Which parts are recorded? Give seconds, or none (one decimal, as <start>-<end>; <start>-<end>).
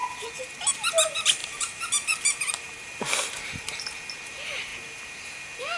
0.0-1.4; 3.8-5.8